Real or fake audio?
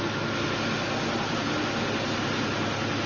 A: real